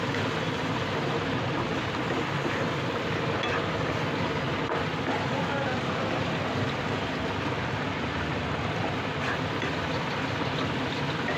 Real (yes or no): yes